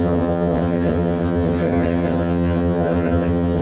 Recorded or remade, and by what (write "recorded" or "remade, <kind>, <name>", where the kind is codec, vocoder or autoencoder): remade, vocoder, HiFi-GAN